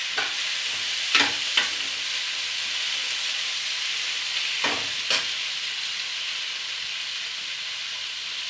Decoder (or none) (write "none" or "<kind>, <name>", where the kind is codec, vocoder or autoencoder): vocoder, BigVGAN v2